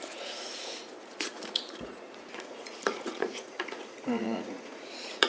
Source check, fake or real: fake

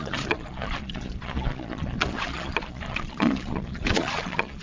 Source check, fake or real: fake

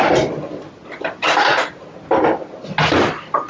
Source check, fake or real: real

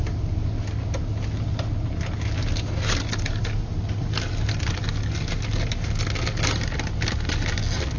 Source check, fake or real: real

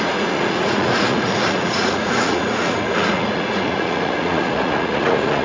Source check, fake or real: fake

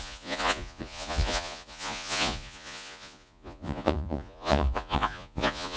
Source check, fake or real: fake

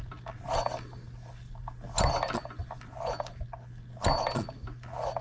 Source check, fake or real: real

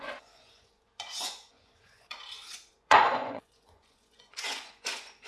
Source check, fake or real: fake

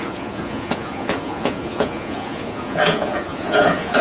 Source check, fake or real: fake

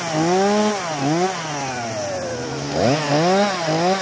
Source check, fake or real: real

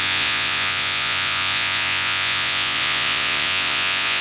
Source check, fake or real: fake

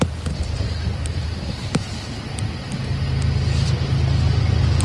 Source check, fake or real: real